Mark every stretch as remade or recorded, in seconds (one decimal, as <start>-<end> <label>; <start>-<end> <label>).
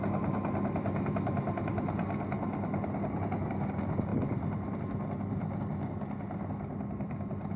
0.0-7.6 recorded